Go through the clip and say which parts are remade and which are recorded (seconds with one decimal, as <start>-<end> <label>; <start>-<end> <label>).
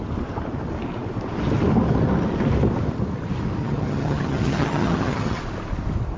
0.0-3.6 recorded; 3.6-5.4 remade; 5.4-6.2 recorded